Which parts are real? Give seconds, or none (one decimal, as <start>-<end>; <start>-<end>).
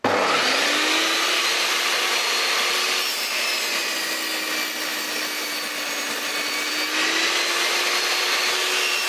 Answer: 0.0-9.1